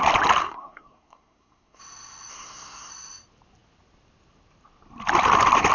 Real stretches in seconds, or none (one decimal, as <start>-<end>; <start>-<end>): 0.0-0.4; 1.8-2.3; 2.9-5.7